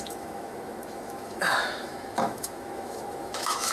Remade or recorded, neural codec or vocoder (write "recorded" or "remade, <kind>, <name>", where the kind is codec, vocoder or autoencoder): remade, autoencoder, DAC-VAE